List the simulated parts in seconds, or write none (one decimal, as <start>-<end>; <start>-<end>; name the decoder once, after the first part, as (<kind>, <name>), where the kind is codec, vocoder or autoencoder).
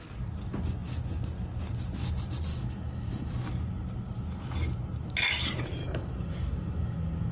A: 2.5-3.3 (autoencoder, DAC-VAE); 5.8-7.3